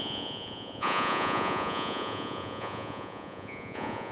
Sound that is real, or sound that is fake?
fake